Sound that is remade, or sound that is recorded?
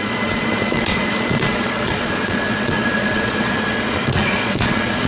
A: remade